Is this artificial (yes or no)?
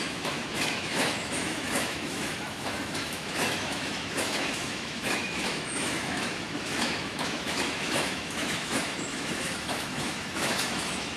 yes